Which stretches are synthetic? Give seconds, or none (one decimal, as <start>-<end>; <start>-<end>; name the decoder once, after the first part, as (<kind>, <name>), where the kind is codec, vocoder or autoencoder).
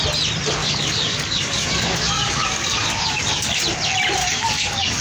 0.6-3.6 (codec, DAC); 4.2-5.0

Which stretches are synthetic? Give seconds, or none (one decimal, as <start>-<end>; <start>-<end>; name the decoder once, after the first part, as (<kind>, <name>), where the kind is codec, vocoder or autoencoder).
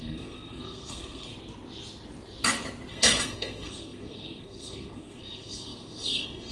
0.0-1.3 (codec, SNAC); 2.9-6.5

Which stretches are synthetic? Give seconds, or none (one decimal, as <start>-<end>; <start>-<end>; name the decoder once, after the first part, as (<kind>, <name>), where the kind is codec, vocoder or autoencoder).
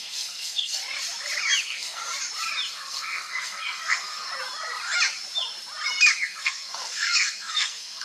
0.0-0.8 (codec, SNAC); 1.6-2.0; 2.7-4.3; 6.1-8.0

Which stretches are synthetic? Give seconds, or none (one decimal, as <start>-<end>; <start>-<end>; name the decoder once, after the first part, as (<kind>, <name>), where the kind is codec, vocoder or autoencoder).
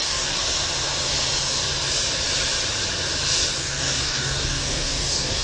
0.0-0.4 (codec, DAC); 3.6-5.4